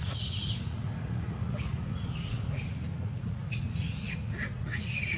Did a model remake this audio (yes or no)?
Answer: yes